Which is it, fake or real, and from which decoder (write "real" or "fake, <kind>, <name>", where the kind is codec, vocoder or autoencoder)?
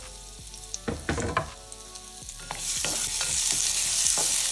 real